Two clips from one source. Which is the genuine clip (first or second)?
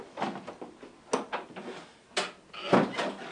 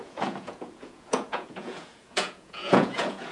first